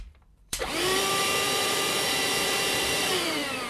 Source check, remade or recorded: remade